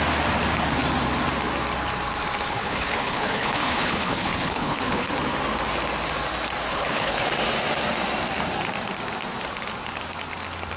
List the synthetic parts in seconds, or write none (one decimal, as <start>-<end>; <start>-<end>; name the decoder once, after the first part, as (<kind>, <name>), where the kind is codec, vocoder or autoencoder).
2.5-5.1 (codec, HILCodec); 6.7-7.3